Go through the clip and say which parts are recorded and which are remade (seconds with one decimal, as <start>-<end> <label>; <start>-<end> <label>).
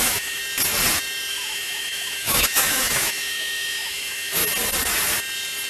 0.0-0.4 remade; 0.4-1.3 recorded; 1.3-4.4 remade; 4.4-5.7 recorded